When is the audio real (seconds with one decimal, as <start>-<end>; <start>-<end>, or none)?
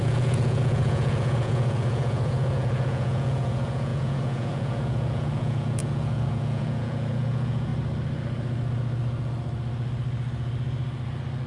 7.7-11.5